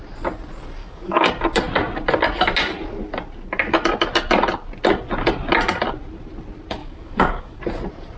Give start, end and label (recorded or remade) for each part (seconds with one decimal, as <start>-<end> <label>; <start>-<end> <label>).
0.0-0.8 recorded; 0.8-1.3 remade; 1.3-6.8 recorded; 6.8-7.6 remade; 7.6-8.2 recorded